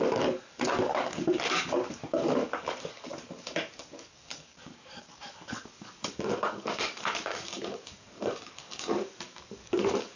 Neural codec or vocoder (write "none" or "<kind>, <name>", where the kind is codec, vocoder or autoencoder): codec, DAC